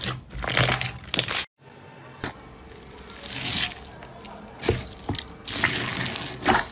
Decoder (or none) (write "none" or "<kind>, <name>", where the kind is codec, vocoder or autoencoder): none